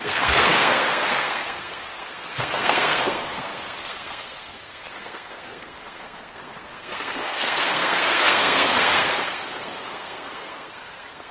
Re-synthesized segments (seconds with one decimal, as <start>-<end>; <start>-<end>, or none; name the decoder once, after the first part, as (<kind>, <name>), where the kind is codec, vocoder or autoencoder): 0.0-11.3 (codec, SNAC)

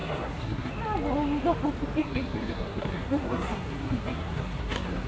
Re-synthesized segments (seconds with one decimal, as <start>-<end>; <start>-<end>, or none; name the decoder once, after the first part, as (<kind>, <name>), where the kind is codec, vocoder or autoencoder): 0.0-0.7 (codec, SNAC); 2.0-5.1